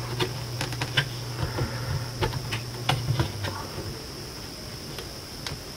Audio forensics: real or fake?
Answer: real